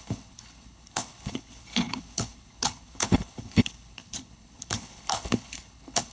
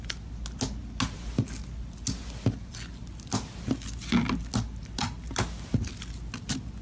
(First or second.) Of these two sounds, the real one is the second